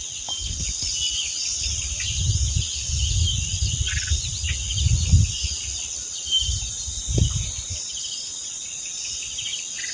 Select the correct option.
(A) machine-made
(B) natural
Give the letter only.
B